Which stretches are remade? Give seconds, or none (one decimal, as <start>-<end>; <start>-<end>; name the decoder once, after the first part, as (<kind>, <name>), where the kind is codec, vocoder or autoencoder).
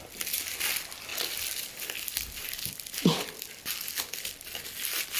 none